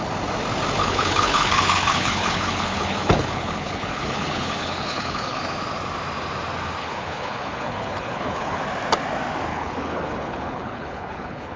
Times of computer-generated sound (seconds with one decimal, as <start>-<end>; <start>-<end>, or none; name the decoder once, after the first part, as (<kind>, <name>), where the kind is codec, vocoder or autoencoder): 0.8-5.4 (codec, HILCodec); 6.8-8.6; 9.5-11.6